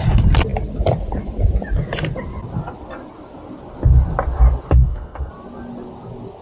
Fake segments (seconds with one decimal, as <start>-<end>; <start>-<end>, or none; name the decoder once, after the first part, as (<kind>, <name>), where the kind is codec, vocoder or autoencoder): 4.8-5.3 (codec, SNAC)